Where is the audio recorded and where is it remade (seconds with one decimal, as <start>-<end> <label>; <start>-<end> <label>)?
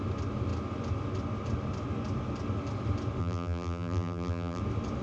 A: 0.0-3.2 recorded; 3.2-4.6 remade; 4.6-5.0 recorded